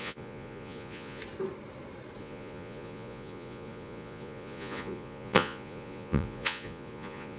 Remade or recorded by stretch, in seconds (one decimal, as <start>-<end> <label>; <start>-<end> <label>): 0.0-1.2 remade; 1.2-2.2 recorded; 2.2-7.4 remade